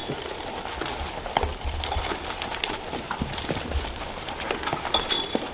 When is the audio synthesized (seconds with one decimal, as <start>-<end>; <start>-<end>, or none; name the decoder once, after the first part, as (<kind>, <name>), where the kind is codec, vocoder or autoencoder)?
none

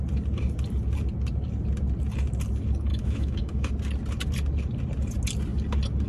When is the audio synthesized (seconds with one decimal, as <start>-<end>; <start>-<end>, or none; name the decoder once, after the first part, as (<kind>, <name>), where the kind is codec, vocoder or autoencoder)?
2.9-3.7 (autoencoder, DAC-VAE)